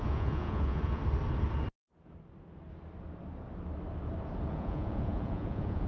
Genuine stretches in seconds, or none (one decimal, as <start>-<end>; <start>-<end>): 1.0-4.5